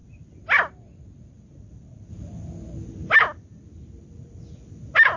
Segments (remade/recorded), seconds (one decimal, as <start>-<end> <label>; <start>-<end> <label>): 0.0-5.2 recorded